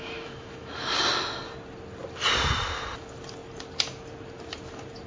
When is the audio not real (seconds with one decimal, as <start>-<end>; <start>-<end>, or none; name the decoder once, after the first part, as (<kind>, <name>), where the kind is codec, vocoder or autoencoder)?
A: 0.0-0.7 (autoencoder, DAC-VAE)